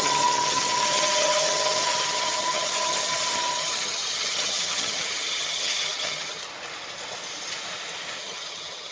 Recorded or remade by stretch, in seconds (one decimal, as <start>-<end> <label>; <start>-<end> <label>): 0.0-6.5 remade; 6.5-8.2 recorded; 8.2-8.9 remade